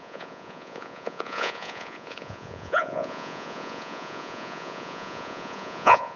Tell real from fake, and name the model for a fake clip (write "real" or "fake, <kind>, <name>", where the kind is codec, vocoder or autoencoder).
fake, vocoder, Vocos